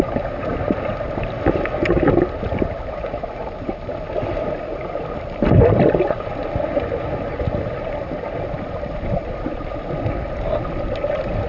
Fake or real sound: real